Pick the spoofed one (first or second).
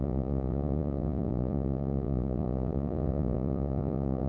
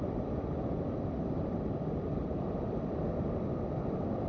first